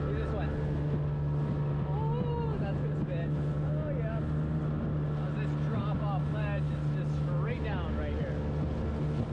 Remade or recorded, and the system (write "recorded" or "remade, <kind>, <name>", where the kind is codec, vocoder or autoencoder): recorded